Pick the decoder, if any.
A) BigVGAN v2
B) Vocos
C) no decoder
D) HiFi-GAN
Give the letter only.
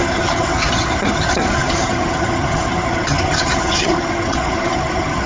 D